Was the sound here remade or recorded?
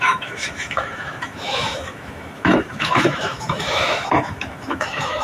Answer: remade